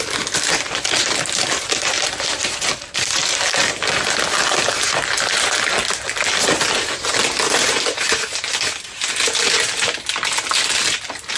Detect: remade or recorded recorded